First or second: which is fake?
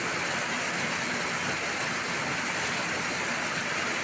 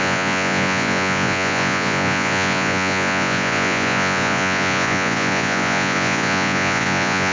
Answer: second